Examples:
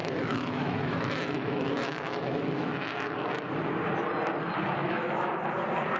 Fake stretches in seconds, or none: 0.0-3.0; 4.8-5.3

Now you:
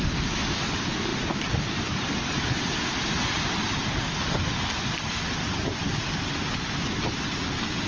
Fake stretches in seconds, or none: none

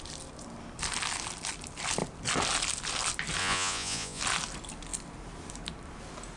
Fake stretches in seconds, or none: 3.4-4.2

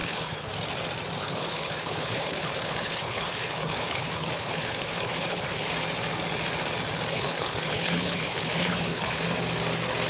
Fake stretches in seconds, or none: 0.0-0.5; 1.2-5.7; 7.1-9.2

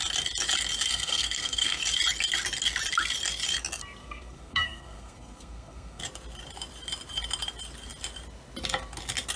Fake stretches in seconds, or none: 0.9-1.8; 4.0-6.0

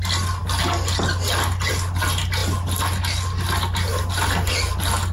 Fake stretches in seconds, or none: none

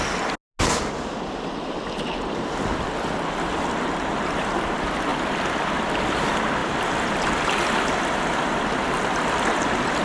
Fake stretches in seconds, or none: none